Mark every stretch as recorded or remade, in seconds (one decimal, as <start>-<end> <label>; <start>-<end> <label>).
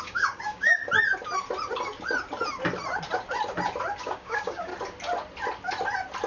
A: 0.0-0.8 remade; 0.8-4.0 recorded; 4.0-4.7 remade; 4.7-6.3 recorded